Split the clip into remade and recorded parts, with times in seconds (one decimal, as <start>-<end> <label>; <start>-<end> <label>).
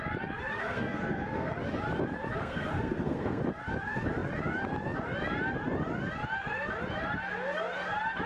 0.0-0.5 recorded; 0.5-1.5 remade; 1.5-2.4 recorded; 2.4-3.4 remade; 3.4-8.3 recorded